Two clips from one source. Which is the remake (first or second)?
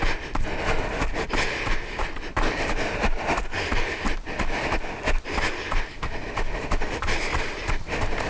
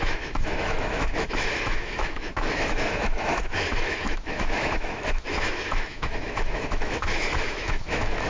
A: second